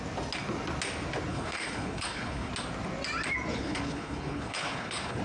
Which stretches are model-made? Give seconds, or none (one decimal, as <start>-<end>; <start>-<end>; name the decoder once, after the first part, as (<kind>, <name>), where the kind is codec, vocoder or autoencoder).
1.3-2.5 (codec, HILCodec); 3.5-5.2

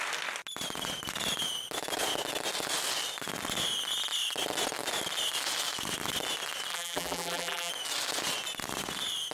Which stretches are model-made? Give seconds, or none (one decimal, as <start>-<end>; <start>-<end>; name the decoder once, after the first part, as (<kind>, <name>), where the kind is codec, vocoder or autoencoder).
6.7-7.7 (vocoder, BigVGAN v2)

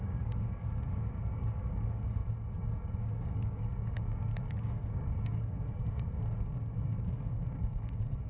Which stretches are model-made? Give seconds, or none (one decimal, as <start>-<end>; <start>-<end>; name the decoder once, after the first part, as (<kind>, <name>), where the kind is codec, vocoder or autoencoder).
0.0-2.2 (codec, DAC); 3.0-8.3

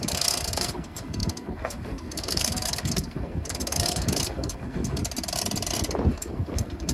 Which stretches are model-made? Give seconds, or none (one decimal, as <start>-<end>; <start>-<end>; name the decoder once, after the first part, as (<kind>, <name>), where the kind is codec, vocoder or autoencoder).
0.0-5.0 (codec, SNAC); 6.1-6.9